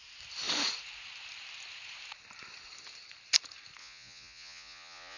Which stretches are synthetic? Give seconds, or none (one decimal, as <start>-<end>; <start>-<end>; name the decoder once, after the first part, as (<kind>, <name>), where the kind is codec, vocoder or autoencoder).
3.8-5.2 (vocoder, Vocos)